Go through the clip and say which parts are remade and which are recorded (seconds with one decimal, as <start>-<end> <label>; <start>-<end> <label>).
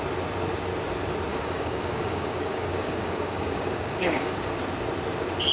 0.0-1.3 recorded; 1.3-4.6 remade; 4.6-5.5 recorded